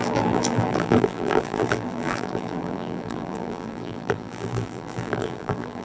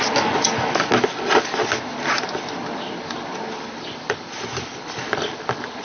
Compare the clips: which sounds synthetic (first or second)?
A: first